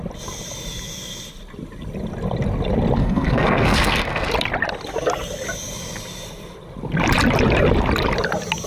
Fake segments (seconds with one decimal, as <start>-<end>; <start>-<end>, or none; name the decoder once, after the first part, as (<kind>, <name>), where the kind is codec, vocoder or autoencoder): 3.0-4.3 (codec, SNAC)